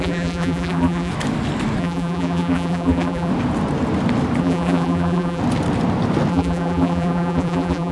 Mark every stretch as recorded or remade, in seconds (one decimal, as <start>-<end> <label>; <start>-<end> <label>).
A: 0.0-1.1 remade; 1.1-1.8 recorded; 1.8-3.3 remade; 3.3-4.4 recorded; 4.4-5.4 remade; 5.4-6.3 recorded; 6.3-7.9 remade